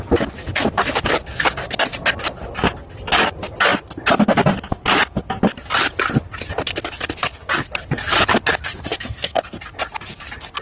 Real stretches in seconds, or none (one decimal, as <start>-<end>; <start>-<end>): 0.0-8.9; 9.6-10.6